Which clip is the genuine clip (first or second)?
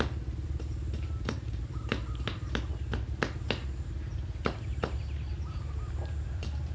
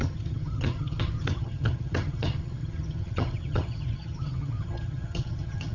first